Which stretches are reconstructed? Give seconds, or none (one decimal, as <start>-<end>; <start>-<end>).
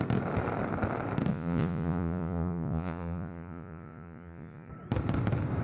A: 1.3-4.7